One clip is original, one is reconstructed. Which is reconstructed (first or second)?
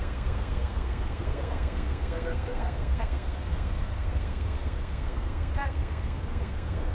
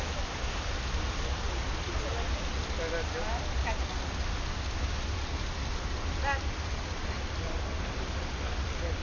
first